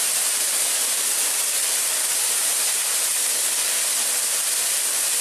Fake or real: real